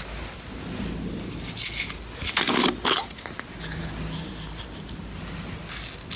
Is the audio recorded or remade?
recorded